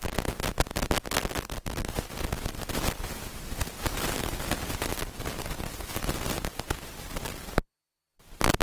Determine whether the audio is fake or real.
real